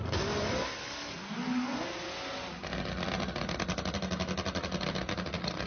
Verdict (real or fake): real